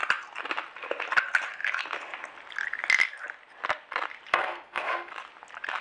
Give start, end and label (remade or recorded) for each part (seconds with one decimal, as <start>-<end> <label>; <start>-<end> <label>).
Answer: 0.0-4.3 recorded; 4.3-5.1 remade; 5.1-5.8 recorded